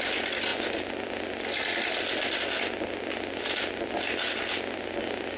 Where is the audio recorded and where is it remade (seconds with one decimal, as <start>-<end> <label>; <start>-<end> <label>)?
0.0-5.4 recorded